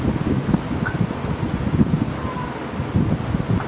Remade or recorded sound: recorded